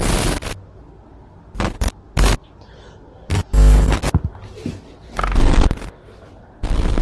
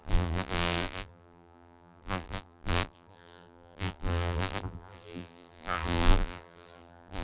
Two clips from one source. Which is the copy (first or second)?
second